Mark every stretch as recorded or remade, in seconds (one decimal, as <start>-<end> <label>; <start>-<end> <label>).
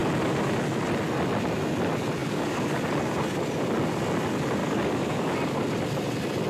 0.0-2.2 recorded; 2.2-2.9 remade; 2.9-4.6 recorded; 4.6-5.4 remade; 5.4-6.5 recorded